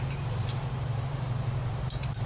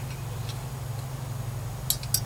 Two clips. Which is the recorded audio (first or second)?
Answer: second